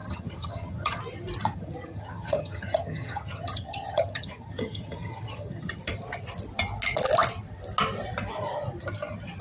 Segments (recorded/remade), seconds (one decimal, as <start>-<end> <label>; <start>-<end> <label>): 0.0-1.0 remade; 1.0-1.5 recorded; 1.5-5.8 remade; 5.8-9.4 recorded